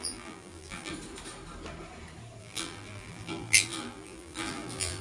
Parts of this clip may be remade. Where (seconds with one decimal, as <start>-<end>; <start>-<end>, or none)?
0.0-0.9; 2.4-5.0